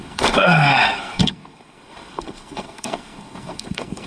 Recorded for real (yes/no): no